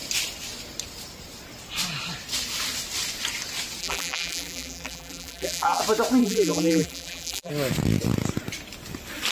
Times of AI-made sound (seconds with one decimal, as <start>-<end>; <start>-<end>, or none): 3.8-5.8; 6.2-7.5